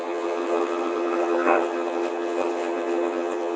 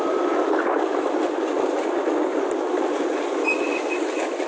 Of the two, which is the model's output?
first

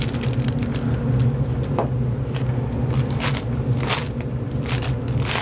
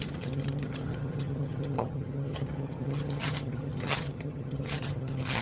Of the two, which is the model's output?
second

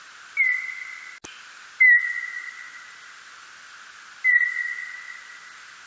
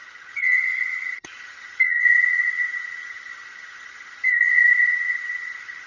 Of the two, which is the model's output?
second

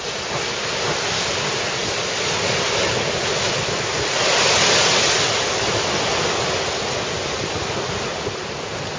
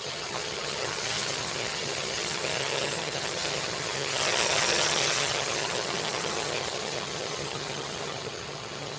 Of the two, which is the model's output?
second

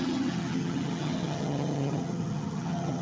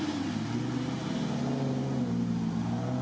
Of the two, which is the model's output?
first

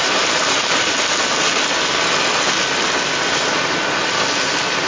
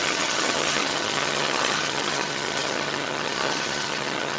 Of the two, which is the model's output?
second